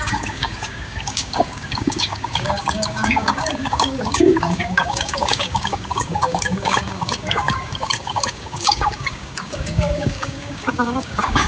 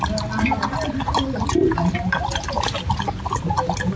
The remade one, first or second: first